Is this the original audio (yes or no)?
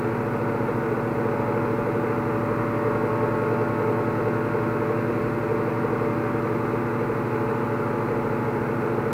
yes